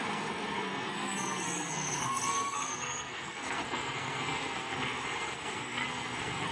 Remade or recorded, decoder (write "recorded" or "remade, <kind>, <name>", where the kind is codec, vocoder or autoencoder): remade, codec, SNAC